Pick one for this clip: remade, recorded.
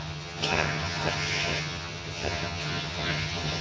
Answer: remade